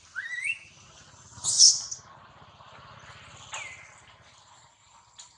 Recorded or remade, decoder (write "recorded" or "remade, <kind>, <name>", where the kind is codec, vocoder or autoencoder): recorded